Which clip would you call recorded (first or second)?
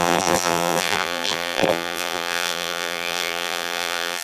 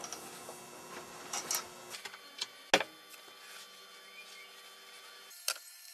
second